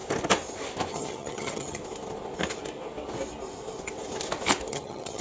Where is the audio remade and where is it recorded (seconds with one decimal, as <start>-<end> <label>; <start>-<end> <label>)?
0.0-0.9 recorded; 0.9-1.8 remade; 1.8-4.7 recorded; 4.7-5.2 remade